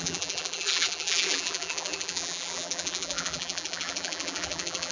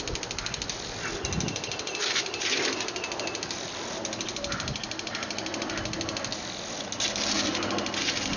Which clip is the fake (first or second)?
first